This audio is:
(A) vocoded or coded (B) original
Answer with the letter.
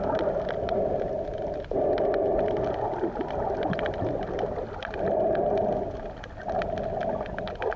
B